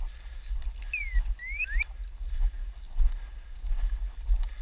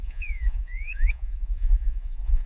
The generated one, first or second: second